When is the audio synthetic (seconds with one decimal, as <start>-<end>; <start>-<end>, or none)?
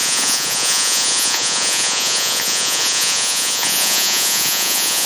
0.0-5.1